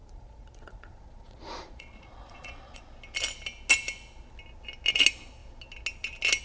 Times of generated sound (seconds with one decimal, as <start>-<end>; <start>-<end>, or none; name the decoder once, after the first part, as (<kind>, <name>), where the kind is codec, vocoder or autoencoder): 0.0-2.8 (vocoder, Vocos)